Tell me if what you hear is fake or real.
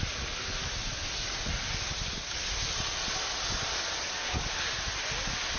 real